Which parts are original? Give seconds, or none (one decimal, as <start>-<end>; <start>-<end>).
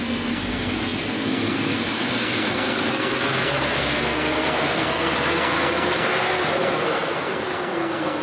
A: none